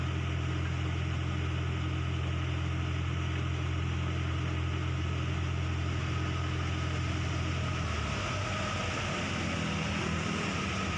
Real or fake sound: real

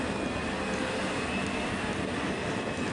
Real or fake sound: real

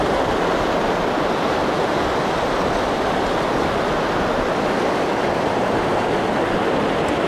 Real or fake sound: real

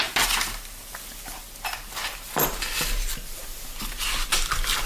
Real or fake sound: real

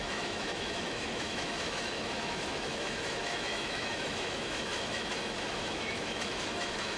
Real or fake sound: fake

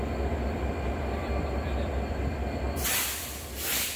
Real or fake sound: real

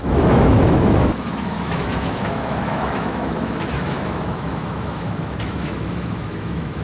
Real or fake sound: fake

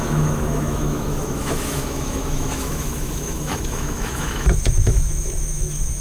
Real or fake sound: fake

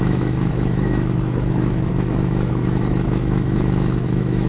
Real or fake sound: fake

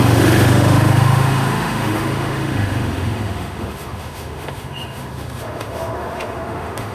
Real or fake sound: fake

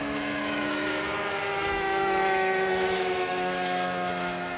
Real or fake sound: fake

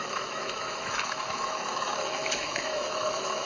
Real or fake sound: fake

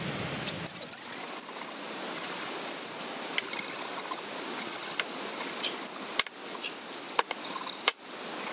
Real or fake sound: real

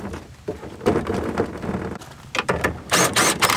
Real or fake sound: real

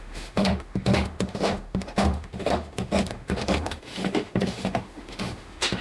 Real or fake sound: fake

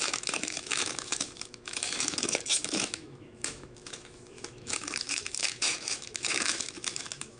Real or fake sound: fake